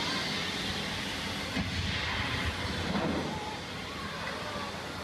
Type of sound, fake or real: real